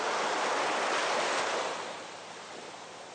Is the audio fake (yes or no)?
no